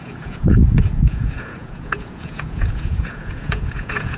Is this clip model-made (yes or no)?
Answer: yes